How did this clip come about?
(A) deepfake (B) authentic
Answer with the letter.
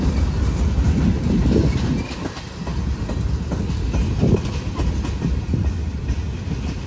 B